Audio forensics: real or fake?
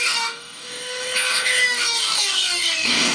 fake